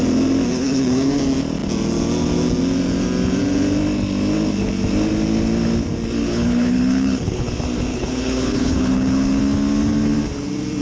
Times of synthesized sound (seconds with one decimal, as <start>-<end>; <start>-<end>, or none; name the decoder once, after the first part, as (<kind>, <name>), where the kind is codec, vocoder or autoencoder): 0.5-1.2 (codec, HILCodec); 6.2-7.5; 7.9-9.4